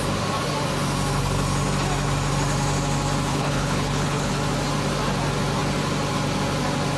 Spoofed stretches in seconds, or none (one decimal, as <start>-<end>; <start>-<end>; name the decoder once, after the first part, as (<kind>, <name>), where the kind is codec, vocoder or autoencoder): 3.3-4.3 (codec, HILCodec)